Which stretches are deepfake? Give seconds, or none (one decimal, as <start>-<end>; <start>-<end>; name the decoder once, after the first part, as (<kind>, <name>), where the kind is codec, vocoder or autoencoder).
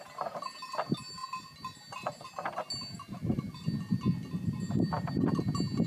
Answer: none